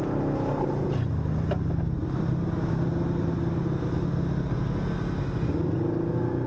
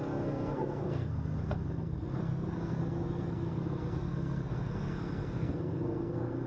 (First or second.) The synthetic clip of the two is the second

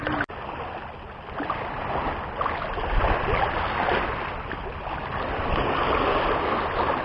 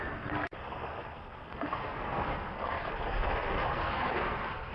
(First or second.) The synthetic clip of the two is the second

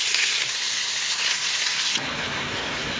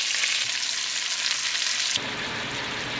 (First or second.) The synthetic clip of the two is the first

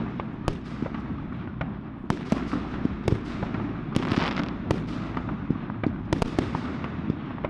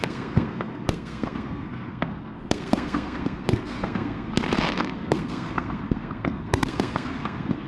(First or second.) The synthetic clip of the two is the second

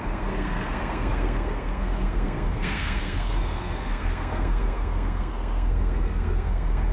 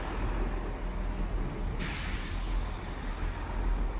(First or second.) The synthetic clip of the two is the first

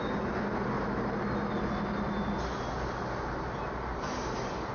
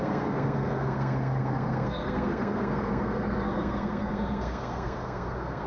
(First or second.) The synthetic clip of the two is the second